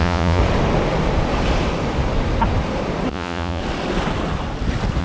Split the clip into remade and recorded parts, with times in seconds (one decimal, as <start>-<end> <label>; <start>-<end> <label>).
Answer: 0.0-0.4 remade; 0.4-3.1 recorded; 3.1-3.6 remade; 3.6-5.0 recorded

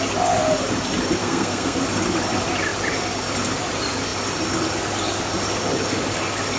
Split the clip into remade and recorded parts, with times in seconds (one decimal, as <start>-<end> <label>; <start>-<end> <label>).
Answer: 0.0-1.2 recorded; 1.2-1.8 remade; 1.8-6.6 recorded

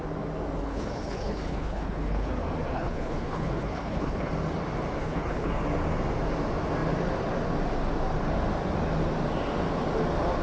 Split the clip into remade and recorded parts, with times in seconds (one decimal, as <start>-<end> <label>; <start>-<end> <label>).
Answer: 0.0-0.6 recorded; 0.6-2.3 remade; 2.3-2.7 recorded; 2.7-4.3 remade; 4.3-5.0 recorded; 5.0-5.5 remade; 5.5-10.4 recorded

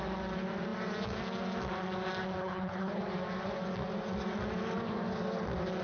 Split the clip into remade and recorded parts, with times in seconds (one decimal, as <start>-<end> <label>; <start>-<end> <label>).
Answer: 0.0-2.4 recorded; 2.4-3.0 remade; 3.0-5.8 recorded

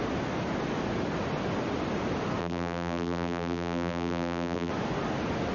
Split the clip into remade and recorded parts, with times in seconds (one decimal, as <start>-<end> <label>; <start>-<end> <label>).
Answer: 0.0-2.4 recorded; 2.4-4.7 remade; 4.7-5.5 recorded

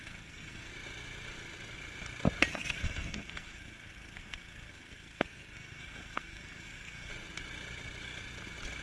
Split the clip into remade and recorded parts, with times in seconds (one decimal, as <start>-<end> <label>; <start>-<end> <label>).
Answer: 0.0-0.7 remade; 0.7-2.5 recorded; 2.5-7.1 remade; 7.1-8.8 recorded

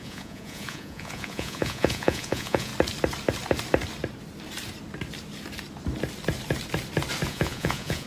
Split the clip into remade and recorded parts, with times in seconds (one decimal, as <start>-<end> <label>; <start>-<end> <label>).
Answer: 0.0-2.7 remade; 2.7-7.3 recorded; 7.3-8.1 remade